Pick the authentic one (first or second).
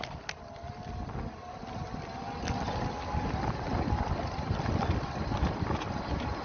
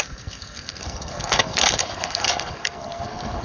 first